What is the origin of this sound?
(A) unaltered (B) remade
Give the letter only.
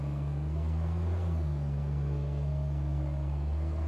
B